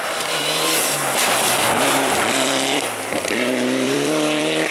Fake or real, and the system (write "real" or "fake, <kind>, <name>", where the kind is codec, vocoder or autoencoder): fake, vocoder, BigVGAN v2